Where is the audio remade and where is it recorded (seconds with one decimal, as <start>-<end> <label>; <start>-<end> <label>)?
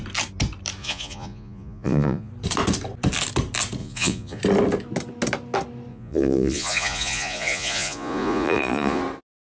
0.0-0.8 recorded; 0.8-2.3 remade; 2.3-3.8 recorded; 3.8-4.4 remade; 4.4-5.9 recorded; 5.9-9.0 remade; 9.0-9.5 recorded